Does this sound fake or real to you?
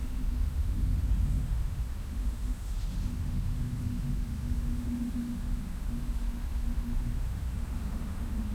fake